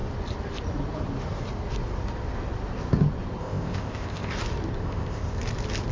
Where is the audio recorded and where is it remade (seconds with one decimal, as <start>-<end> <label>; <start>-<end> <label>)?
0.0-3.4 recorded; 3.4-4.3 remade; 4.3-4.8 recorded; 4.8-5.4 remade; 5.4-5.9 recorded